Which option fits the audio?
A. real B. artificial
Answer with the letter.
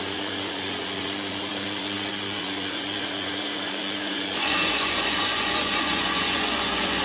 B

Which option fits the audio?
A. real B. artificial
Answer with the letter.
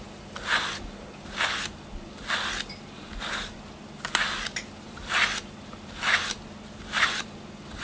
A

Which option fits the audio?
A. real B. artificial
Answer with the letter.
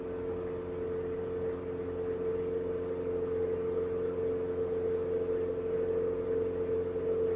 A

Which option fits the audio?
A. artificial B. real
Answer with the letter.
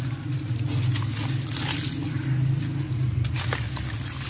B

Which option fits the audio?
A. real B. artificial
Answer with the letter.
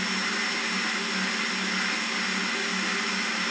A